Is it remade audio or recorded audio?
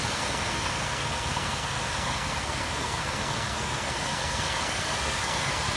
remade